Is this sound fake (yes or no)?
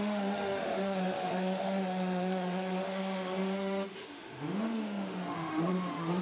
yes